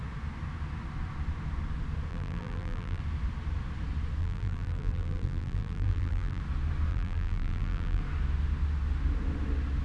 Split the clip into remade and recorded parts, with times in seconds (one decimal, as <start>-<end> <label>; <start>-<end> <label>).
0.0-2.1 recorded; 2.1-3.0 remade; 3.0-4.2 recorded; 4.2-6.4 remade; 6.4-6.9 recorded; 6.9-8.0 remade; 8.0-9.8 recorded